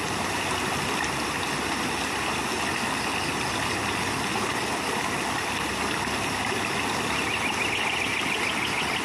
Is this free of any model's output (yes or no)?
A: yes